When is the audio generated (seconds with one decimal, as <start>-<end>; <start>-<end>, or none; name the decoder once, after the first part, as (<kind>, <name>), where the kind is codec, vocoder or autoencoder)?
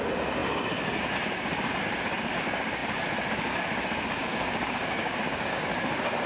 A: 4.2-5.6 (codec, DAC)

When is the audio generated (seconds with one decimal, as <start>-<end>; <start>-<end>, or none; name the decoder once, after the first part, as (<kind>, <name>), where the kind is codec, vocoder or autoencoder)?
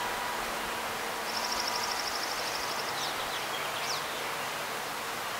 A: none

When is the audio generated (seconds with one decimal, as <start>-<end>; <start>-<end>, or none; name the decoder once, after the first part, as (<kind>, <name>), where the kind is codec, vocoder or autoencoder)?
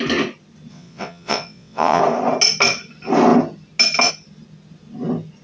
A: 0.7-2.0 (vocoder, WaveNeXt)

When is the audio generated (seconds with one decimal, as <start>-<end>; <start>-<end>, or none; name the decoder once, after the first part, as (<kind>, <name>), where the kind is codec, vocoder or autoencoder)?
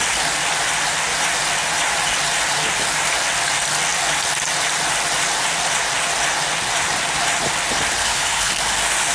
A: 8.0-8.5 (codec, HILCodec)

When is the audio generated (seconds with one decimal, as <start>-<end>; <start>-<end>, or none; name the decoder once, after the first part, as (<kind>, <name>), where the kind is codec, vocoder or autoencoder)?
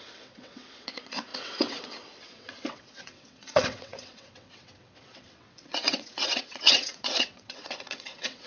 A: 0.0-8.5 (vocoder, WaveNeXt)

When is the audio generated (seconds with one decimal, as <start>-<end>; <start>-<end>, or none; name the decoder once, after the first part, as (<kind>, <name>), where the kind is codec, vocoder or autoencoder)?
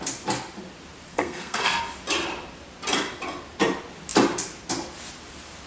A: 1.1-1.8 (codec, SNAC)